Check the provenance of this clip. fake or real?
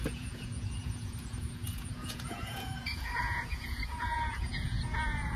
fake